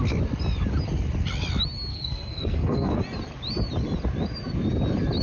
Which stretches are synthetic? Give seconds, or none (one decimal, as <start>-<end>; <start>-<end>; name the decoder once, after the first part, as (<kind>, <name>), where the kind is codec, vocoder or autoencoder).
1.9-3.0 (codec, SNAC)